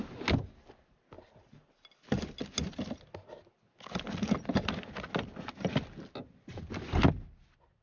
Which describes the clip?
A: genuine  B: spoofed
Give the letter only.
A